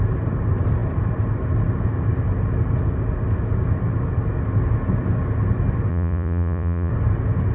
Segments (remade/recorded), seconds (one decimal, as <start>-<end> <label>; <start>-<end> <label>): 0.0-5.9 recorded; 5.9-6.9 remade; 6.9-7.5 recorded

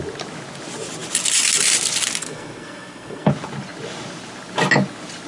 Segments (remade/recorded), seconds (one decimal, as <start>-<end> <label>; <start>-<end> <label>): 0.0-2.2 recorded; 2.2-3.3 remade; 3.3-5.3 recorded